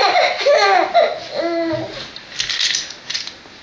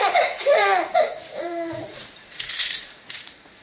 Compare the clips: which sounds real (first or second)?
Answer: first